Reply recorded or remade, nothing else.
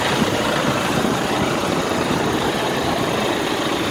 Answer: remade